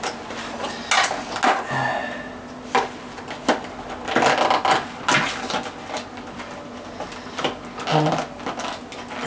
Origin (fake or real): real